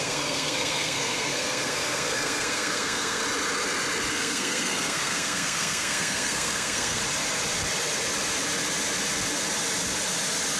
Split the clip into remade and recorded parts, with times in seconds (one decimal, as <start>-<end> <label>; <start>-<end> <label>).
0.0-3.2 remade; 3.2-4.1 recorded; 4.1-7.0 remade; 7.0-10.6 recorded